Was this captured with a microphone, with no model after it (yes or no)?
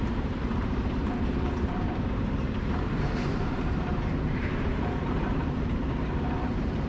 no